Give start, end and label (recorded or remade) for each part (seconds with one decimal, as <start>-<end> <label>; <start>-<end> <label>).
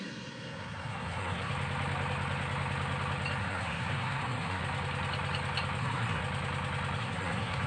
0.0-1.5 remade; 1.5-3.4 recorded; 3.4-4.6 remade; 4.6-5.8 recorded; 5.8-6.2 remade; 6.2-7.0 recorded; 7.0-7.7 remade